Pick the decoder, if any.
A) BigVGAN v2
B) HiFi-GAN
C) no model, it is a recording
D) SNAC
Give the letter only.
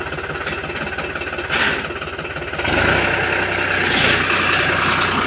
C